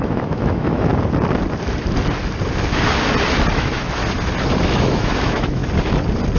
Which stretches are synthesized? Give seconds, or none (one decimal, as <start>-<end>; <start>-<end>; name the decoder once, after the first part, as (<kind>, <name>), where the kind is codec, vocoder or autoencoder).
0.0-0.9 (autoencoder, DAC-VAE); 3.5-4.0; 4.6-5.6